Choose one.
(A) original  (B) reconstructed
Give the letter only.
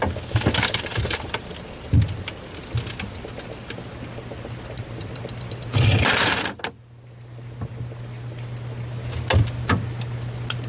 A